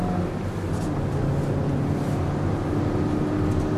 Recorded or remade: recorded